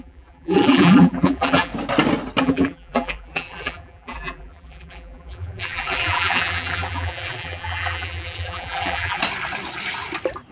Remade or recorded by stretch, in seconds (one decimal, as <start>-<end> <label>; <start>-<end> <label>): 0.0-1.7 remade; 1.7-2.4 recorded; 2.4-9.2 remade; 9.2-10.5 recorded